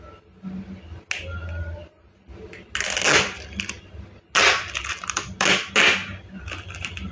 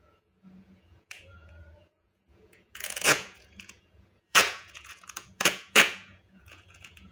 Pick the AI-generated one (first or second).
second